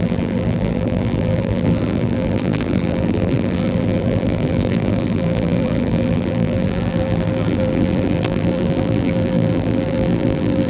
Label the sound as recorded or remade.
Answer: remade